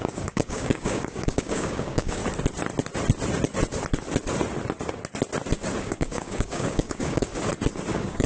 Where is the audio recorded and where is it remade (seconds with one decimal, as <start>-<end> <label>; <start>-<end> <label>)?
0.0-2.2 remade; 2.2-5.8 recorded; 5.8-7.3 remade; 7.3-7.9 recorded; 7.9-8.3 remade